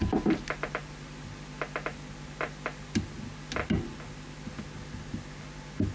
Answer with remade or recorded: recorded